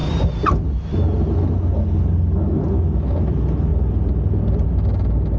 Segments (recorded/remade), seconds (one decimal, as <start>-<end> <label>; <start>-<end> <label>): 0.0-5.4 recorded

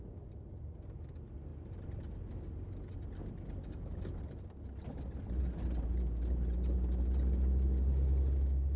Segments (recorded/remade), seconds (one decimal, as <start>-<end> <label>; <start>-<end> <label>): 0.0-8.8 recorded

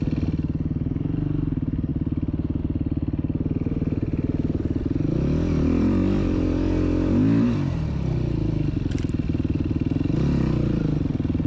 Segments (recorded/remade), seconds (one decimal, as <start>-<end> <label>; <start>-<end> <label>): 0.0-11.5 recorded

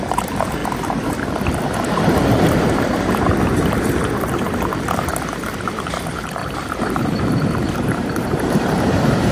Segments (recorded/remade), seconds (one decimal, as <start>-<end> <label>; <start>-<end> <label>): 0.0-0.6 remade; 0.6-2.1 recorded; 2.1-5.1 remade; 5.1-5.9 recorded; 5.9-9.3 remade

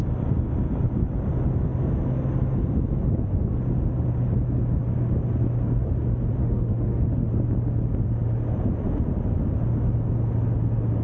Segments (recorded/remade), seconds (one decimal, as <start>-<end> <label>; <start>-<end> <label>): 0.0-6.4 recorded; 6.4-7.3 remade; 7.3-11.0 recorded